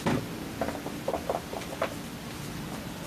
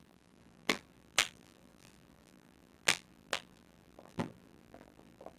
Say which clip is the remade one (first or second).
second